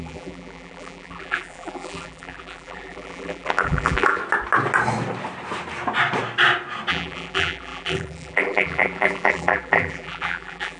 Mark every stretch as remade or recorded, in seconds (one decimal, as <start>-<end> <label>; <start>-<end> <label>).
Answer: 0.0-4.2 remade; 4.2-6.9 recorded; 6.9-10.8 remade